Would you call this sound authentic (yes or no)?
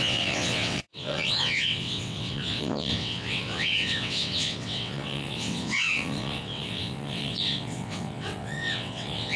no